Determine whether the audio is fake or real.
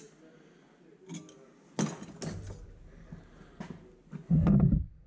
real